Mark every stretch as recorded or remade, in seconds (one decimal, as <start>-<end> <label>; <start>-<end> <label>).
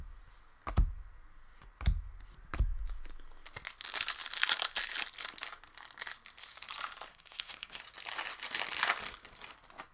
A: 0.0-7.1 recorded; 7.1-7.8 remade; 7.8-9.9 recorded